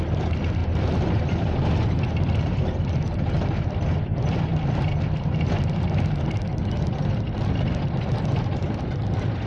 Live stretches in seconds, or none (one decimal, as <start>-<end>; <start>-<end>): 0.0-9.5